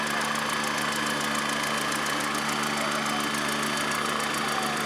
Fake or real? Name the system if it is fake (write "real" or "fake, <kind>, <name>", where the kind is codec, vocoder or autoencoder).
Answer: real